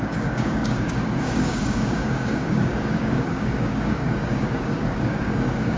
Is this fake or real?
fake